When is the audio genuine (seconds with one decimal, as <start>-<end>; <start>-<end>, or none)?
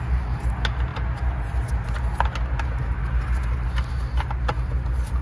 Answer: 0.0-5.2